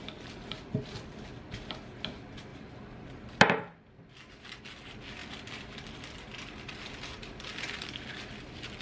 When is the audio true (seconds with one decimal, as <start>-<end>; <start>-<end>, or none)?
0.0-8.8